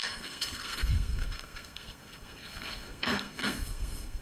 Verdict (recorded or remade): remade